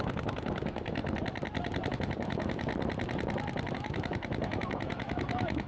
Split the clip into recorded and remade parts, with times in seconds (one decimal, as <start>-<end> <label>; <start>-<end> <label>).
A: 0.0-1.0 remade; 1.0-1.9 recorded; 1.9-2.7 remade; 2.7-3.7 recorded; 3.7-5.7 remade